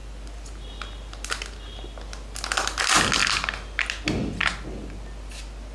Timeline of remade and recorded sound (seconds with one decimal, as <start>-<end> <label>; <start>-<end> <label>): 0.0-5.7 recorded